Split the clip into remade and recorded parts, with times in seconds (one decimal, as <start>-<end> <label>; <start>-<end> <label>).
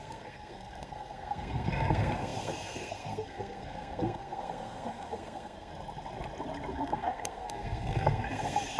0.0-5.7 remade; 5.7-6.7 recorded; 6.7-8.8 remade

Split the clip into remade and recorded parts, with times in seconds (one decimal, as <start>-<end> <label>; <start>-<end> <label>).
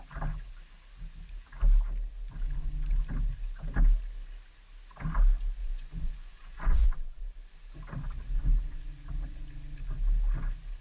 0.0-5.6 recorded; 5.6-7.2 remade; 7.2-10.8 recorded